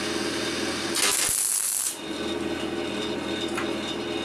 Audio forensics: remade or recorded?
recorded